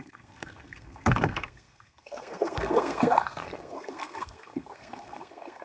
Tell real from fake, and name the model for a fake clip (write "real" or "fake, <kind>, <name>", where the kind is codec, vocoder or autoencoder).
fake, codec, SNAC